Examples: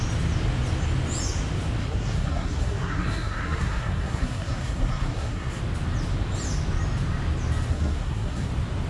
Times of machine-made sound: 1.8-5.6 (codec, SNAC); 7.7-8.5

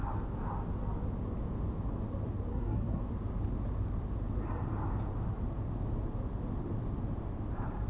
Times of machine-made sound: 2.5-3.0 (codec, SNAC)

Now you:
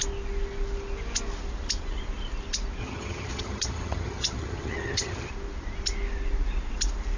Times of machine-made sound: 2.8-5.3 (vocoder, HiFi-GAN)